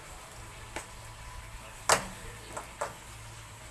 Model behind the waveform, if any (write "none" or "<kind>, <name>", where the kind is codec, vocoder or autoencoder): none